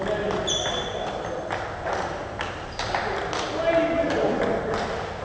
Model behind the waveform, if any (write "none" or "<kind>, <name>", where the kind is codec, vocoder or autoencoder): none